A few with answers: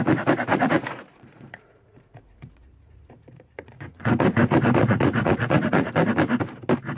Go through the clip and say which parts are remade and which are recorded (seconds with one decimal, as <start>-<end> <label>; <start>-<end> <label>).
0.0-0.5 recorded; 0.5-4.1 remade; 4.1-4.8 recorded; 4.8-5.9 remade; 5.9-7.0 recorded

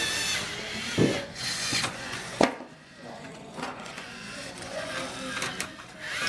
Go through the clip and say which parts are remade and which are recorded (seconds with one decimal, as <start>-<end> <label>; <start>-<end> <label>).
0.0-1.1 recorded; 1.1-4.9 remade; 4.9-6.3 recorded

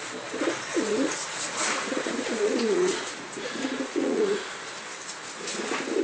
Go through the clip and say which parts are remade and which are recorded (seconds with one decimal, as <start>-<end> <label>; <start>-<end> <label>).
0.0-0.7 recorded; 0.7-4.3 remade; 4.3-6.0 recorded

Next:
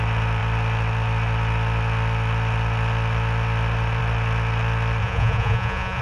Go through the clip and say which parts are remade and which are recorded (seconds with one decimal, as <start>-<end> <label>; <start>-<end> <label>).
0.0-5.0 recorded; 5.0-6.0 remade

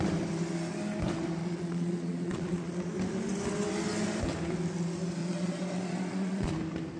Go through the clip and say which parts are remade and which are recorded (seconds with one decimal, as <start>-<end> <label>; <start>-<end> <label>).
0.0-1.4 recorded; 1.4-2.9 remade; 2.9-5.2 recorded; 5.2-6.5 remade; 6.5-7.0 recorded